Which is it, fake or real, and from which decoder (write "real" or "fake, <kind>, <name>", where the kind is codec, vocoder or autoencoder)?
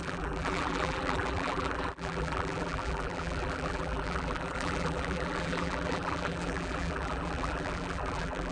fake, vocoder, BigVGAN v2